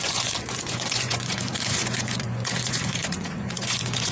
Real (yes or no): no